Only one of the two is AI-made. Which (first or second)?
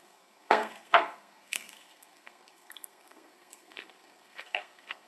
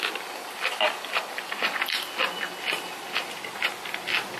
first